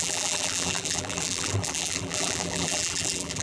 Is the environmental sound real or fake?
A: fake